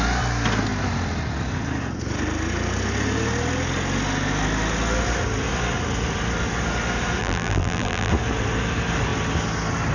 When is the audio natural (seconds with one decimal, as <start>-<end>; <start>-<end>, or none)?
0.0-7.2; 8.1-9.9